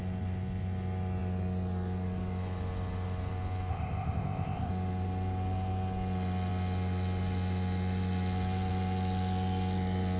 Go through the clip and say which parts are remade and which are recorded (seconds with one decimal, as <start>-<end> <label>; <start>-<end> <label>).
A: 0.0-3.7 recorded; 3.7-4.7 remade; 4.7-10.2 recorded